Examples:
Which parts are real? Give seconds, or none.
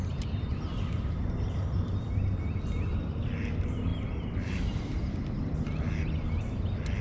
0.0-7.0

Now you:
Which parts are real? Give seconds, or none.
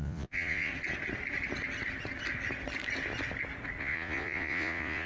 0.7-3.8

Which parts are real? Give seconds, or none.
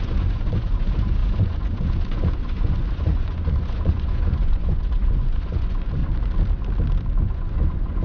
6.0-7.2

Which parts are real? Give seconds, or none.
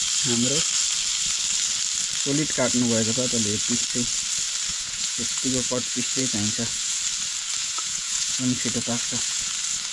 0.0-4.7; 7.0-7.6; 9.5-9.9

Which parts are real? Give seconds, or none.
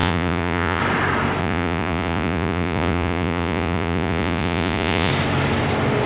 0.8-1.4; 5.1-6.1